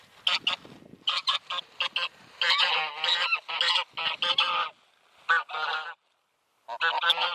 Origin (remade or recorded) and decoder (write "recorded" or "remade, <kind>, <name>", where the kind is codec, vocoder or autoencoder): recorded